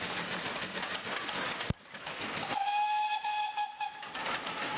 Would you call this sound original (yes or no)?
yes